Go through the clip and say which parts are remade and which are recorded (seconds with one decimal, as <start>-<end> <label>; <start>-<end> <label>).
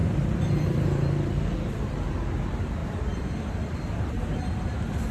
0.0-2.1 remade; 2.1-2.8 recorded; 2.8-4.0 remade; 4.0-5.1 recorded